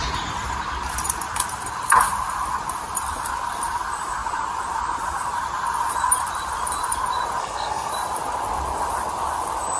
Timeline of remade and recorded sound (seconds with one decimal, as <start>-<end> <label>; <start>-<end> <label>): 0.0-7.4 recorded; 7.4-7.9 remade; 7.9-9.8 recorded